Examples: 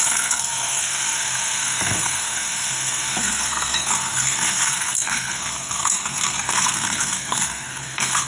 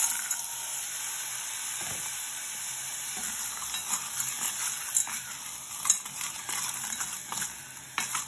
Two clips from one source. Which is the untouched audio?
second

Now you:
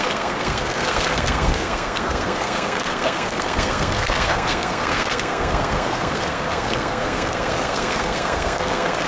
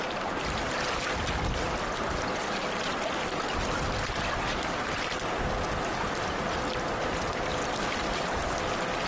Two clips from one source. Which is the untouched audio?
second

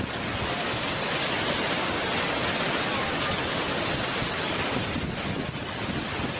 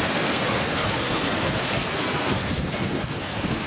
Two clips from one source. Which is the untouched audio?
first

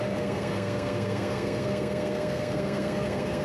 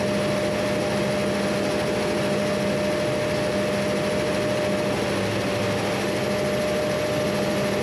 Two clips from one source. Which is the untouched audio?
second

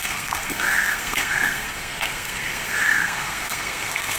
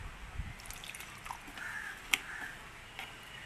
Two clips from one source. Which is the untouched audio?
second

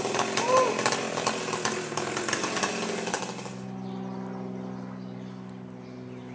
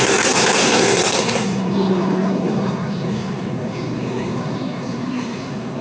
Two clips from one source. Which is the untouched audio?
first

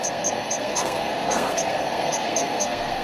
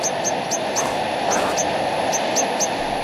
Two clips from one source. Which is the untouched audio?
second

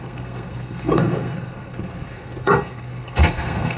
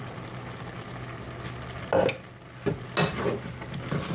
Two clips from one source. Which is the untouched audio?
second